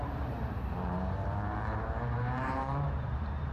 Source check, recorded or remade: remade